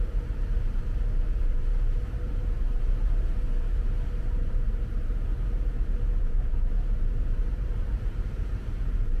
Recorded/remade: remade